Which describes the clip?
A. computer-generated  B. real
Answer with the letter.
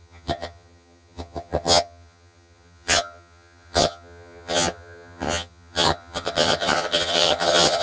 A